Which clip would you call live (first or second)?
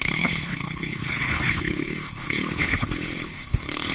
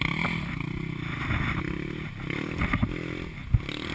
second